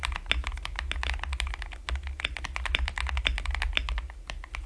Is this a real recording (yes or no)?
yes